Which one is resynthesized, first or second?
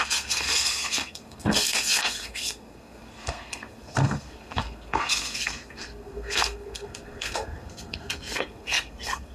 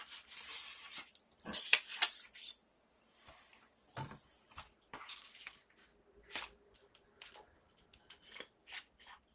first